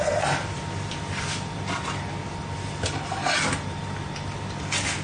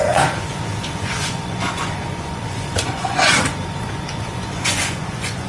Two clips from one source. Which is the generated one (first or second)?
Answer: second